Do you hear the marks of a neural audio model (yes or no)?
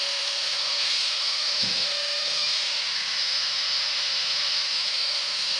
yes